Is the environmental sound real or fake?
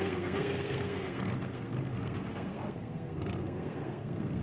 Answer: fake